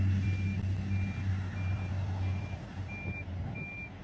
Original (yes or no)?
yes